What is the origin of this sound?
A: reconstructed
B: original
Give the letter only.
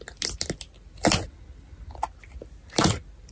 B